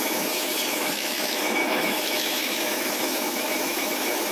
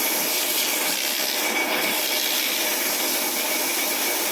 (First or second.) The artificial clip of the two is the first